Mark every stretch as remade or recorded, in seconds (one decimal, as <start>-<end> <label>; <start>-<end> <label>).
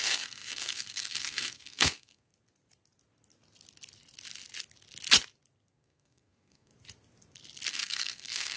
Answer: 0.0-2.3 remade; 2.3-5.7 recorded; 5.7-6.7 remade; 6.7-7.7 recorded; 7.7-8.6 remade